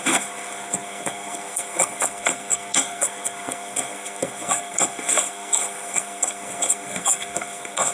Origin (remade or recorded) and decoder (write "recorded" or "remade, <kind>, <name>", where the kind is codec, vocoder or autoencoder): remade, codec, SNAC